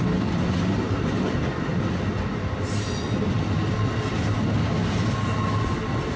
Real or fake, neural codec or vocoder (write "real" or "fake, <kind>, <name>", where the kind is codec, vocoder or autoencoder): real